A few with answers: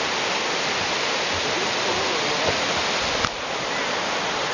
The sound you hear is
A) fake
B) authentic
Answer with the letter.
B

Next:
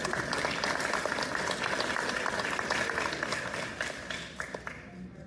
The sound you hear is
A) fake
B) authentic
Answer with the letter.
B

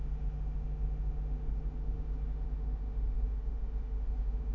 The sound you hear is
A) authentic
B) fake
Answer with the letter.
B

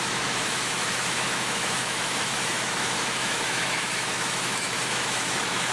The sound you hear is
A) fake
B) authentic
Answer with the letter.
A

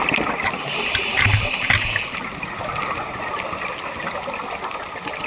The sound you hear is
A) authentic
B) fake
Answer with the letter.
A